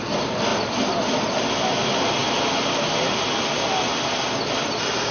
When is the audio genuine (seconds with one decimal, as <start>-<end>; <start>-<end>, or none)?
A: 0.0-5.1